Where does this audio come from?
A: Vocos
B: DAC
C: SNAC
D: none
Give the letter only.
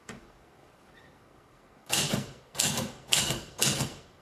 C